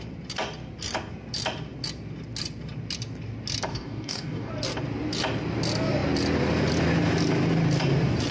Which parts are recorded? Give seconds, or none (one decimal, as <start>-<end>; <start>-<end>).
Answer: 0.0-3.7; 4.5-8.3